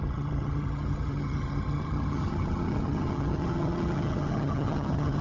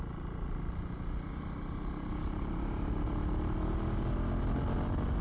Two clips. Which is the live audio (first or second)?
second